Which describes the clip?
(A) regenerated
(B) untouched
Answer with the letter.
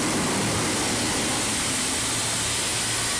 B